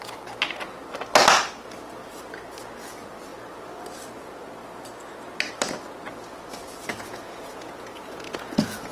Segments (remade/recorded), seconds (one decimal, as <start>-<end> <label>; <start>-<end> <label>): 0.0-7.1 recorded; 7.1-8.9 remade